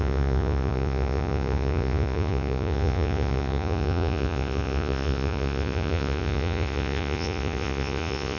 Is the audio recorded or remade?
remade